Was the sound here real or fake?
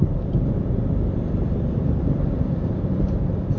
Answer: fake